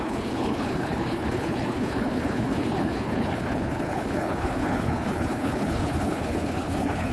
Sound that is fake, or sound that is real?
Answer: fake